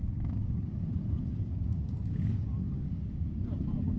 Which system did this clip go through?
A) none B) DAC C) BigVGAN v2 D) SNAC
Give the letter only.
B